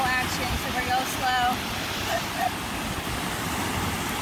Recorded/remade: recorded